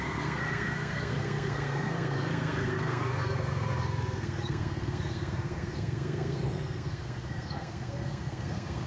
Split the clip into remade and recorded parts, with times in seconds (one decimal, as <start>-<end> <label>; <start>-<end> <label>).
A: 0.0-8.9 remade